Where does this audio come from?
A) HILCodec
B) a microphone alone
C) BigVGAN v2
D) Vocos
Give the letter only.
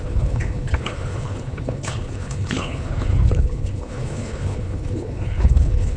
A